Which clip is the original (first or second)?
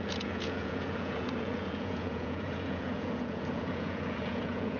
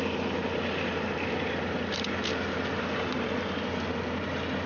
second